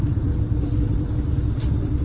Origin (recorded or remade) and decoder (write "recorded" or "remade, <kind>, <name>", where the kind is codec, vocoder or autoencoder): remade, vocoder, BigVGAN v2